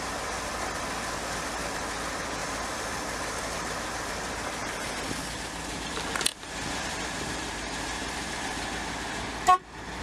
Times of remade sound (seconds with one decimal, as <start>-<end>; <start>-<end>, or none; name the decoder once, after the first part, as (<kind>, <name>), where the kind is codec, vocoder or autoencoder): 6.3-8.4 (vocoder, BigVGAN v2)